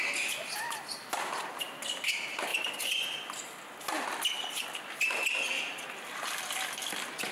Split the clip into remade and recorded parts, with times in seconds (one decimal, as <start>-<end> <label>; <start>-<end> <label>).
0.0-7.3 recorded